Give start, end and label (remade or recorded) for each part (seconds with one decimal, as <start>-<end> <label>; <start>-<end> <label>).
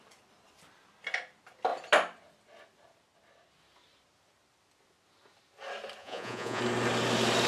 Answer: 0.0-6.0 recorded; 6.0-6.6 remade; 6.6-7.5 recorded